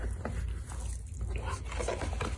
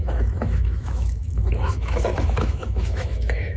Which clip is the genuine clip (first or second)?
first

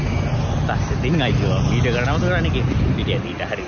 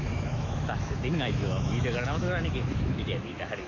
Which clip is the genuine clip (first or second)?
first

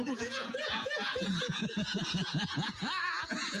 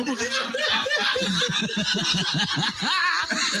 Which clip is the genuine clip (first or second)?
second